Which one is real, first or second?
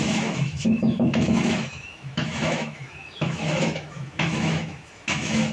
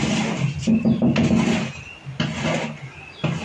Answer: second